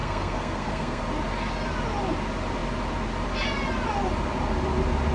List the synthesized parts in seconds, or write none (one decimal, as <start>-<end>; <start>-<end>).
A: 0.0-1.0